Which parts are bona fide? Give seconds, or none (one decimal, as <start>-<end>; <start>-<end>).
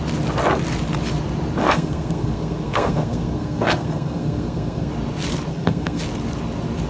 0.0-1.6; 4.9-5.5; 6.0-6.9